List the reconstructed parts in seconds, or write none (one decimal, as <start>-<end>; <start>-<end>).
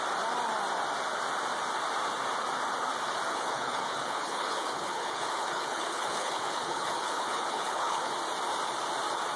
3.3-8.1